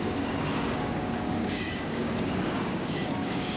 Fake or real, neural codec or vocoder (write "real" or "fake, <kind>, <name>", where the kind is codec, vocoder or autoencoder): fake, codec, DAC